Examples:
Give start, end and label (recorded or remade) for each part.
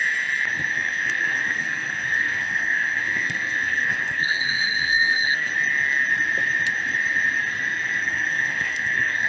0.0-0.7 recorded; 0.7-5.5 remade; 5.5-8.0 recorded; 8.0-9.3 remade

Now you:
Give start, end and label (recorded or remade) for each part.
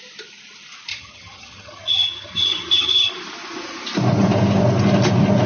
0.0-0.9 recorded; 0.9-3.1 remade; 3.1-5.5 recorded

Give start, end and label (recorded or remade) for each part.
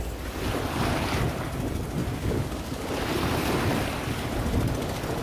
0.0-2.0 recorded; 2.0-2.9 remade; 2.9-5.2 recorded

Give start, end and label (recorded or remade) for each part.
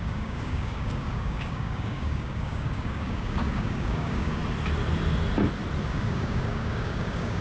0.0-4.4 remade; 4.4-5.8 recorded; 5.8-7.4 remade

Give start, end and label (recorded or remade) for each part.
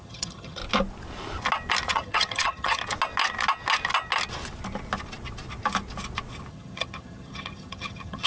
0.0-0.6 remade; 0.6-1.9 recorded; 1.9-2.8 remade; 2.8-6.5 recorded; 6.5-8.3 remade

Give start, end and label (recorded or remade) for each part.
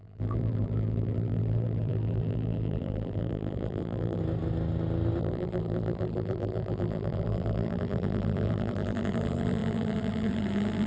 0.0-4.2 remade; 4.2-5.2 recorded; 5.2-10.9 remade